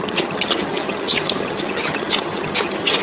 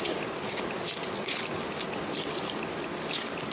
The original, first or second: second